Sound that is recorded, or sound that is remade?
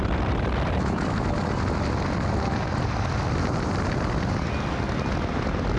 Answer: recorded